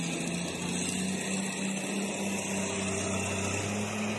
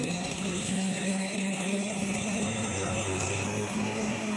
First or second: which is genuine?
first